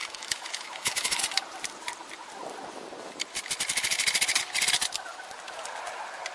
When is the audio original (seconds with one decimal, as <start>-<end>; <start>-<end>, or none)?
1.2-6.3